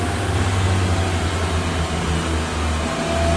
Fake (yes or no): no